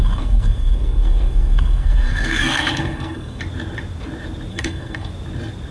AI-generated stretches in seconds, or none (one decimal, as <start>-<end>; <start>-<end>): 0.0-3.4; 4.5-5.1